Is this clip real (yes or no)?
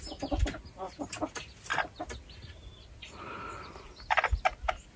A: yes